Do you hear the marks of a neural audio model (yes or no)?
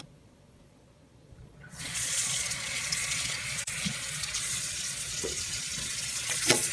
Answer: yes